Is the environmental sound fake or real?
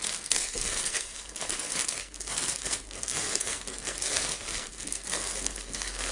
fake